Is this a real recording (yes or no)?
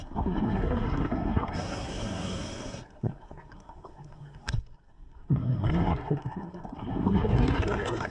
no